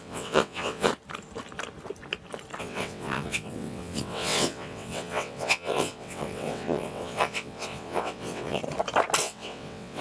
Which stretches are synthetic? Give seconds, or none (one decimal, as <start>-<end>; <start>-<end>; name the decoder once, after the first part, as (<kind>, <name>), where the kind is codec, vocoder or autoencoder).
0.0-0.9 (vocoder, WaveNeXt); 2.6-8.6; 9.2-10.0